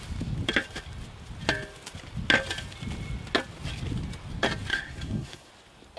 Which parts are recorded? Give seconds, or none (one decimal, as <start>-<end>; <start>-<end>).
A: 0.0-4.7; 5.5-6.0